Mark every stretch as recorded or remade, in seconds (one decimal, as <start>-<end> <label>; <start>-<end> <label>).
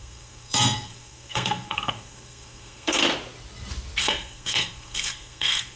0.0-3.0 remade; 3.0-4.0 recorded; 4.0-5.8 remade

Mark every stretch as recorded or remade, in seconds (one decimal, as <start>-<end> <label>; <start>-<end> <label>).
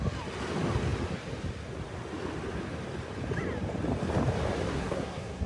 0.0-4.7 recorded; 4.7-5.5 remade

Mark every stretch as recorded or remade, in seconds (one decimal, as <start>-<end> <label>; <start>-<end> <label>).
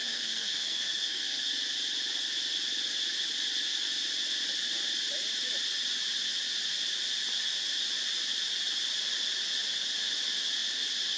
0.0-1.5 remade; 1.5-11.2 recorded